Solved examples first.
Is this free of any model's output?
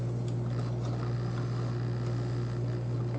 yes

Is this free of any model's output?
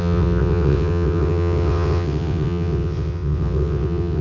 no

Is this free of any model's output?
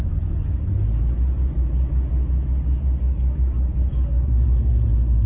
yes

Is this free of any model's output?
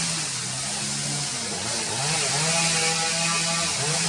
yes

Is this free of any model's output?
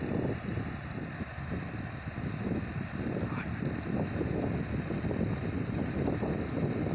yes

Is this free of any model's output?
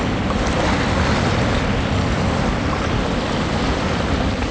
yes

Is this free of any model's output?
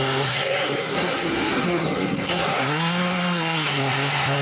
no